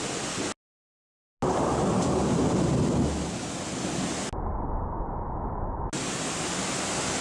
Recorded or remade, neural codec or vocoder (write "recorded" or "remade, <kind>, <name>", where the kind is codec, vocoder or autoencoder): recorded